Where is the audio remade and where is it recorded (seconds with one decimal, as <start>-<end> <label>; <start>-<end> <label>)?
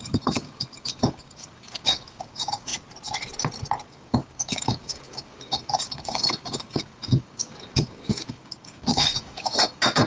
0.0-2.7 remade; 2.7-3.9 recorded; 3.9-10.1 remade